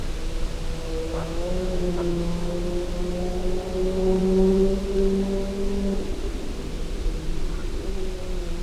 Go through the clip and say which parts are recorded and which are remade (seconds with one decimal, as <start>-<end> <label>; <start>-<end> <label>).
0.0-1.1 recorded; 1.1-2.5 remade; 2.5-8.6 recorded